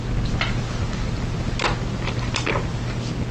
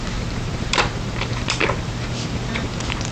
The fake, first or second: second